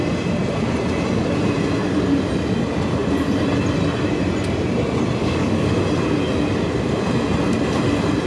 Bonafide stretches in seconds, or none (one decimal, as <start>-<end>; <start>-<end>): 0.0-5.2; 5.7-8.3